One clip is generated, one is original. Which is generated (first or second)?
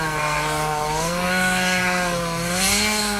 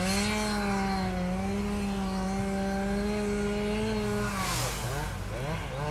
first